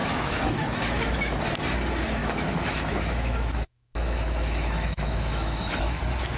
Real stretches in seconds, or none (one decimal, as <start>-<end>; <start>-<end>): 1.4-2.2; 6.0-6.4